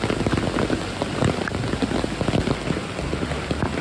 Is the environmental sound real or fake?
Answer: real